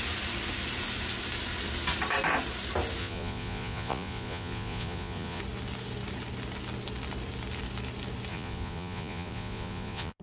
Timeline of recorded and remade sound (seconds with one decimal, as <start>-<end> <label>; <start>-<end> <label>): 0.0-3.0 recorded; 3.0-5.4 remade; 5.4-8.3 recorded; 8.3-10.2 remade